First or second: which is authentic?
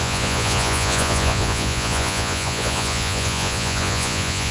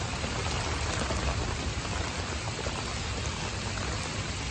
second